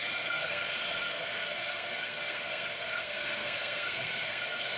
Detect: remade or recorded remade